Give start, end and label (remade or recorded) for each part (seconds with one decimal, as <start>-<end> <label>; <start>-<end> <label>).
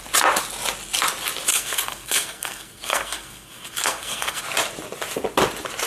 0.0-1.5 recorded; 1.5-4.4 remade; 4.4-5.9 recorded